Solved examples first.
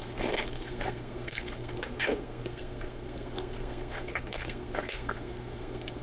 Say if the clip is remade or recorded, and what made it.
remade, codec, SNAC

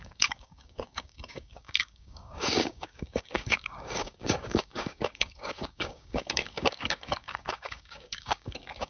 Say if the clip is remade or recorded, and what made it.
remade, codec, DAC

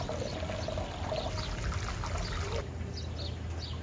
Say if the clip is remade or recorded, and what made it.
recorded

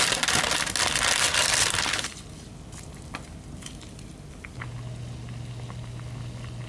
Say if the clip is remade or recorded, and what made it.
recorded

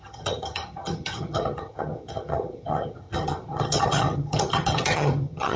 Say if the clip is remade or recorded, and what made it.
remade, vocoder, HiFi-GAN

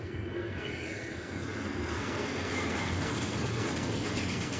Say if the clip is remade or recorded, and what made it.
remade, codec, SNAC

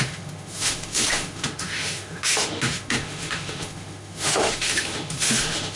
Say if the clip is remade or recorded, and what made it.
remade, autoencoder, DAC-VAE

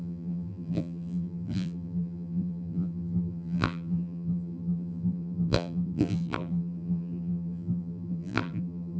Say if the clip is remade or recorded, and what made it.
remade, vocoder, BigVGAN v2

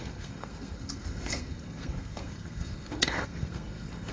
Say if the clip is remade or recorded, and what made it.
remade, codec, SNAC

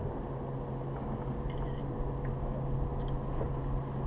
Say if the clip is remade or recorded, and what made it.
recorded